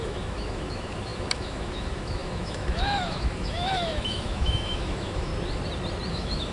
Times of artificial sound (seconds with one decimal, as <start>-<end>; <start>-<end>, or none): 0.0-5.3; 6.1-6.5

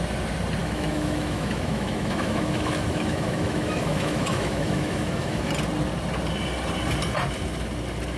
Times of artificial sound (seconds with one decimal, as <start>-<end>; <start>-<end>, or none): 0.6-5.5

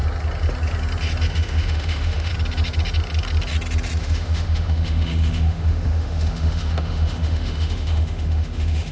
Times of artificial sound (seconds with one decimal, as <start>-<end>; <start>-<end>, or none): 1.3-2.3; 4.0-8.9

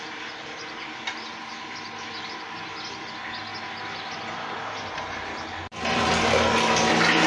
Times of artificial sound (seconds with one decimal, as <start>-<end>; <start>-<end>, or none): none

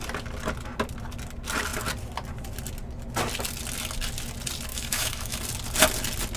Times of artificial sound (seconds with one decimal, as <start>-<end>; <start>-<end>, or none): 4.7-5.4

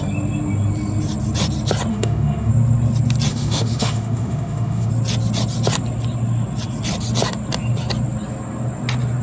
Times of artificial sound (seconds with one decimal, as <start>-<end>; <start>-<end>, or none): 1.9-2.5; 3.3-4.9